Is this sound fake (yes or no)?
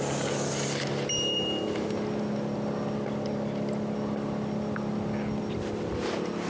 no